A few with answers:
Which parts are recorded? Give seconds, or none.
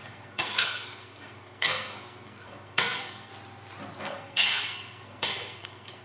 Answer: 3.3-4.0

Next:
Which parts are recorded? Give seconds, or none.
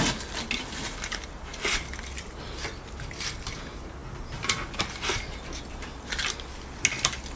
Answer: 0.0-7.4